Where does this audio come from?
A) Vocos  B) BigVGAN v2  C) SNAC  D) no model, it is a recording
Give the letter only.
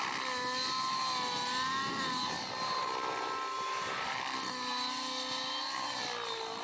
D